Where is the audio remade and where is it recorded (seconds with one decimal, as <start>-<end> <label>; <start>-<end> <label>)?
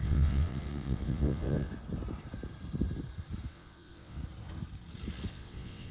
0.0-1.7 remade; 1.7-3.5 recorded; 3.5-4.2 remade; 4.2-5.3 recorded; 5.3-5.9 remade